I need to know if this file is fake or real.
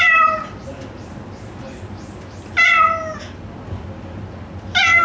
real